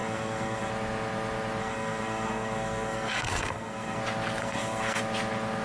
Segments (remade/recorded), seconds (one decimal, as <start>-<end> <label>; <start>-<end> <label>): 0.0-0.7 remade; 0.7-1.6 recorded; 1.6-4.0 remade; 4.0-4.4 recorded; 4.4-5.0 remade; 5.0-5.6 recorded